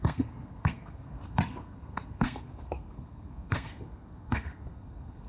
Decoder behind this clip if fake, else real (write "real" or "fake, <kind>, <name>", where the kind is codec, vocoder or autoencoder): fake, codec, SNAC